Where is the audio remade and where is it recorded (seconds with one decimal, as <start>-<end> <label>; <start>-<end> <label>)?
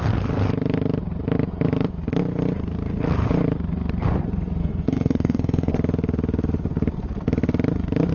0.0-4.6 recorded; 4.6-5.7 remade; 5.7-8.1 recorded